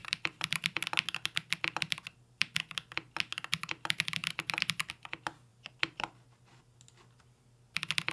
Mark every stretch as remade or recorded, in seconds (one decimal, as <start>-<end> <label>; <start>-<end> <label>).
0.0-8.1 recorded